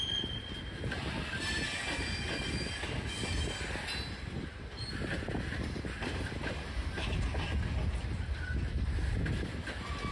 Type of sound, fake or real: real